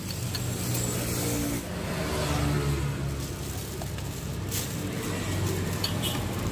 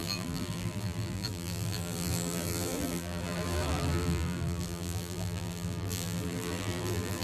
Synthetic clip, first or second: second